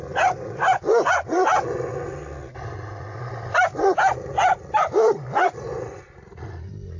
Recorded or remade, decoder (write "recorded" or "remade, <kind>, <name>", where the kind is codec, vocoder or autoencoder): recorded